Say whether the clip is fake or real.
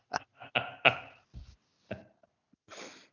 real